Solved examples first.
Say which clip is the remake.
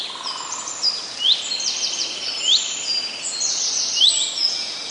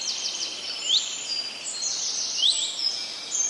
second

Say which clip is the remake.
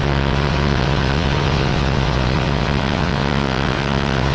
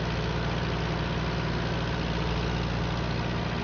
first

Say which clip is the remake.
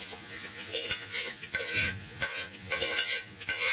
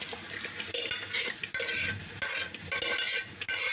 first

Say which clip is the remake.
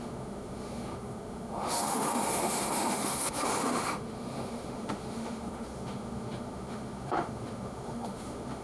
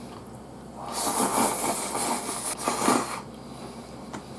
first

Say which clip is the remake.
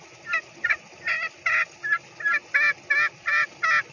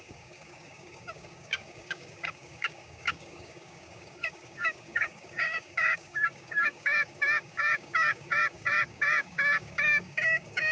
second